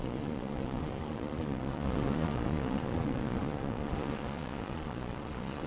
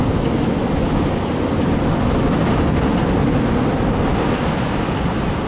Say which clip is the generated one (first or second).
first